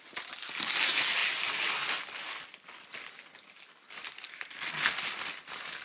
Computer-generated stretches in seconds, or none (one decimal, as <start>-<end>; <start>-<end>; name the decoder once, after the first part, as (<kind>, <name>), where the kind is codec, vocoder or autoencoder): none